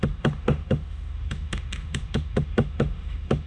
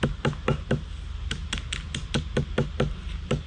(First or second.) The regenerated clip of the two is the first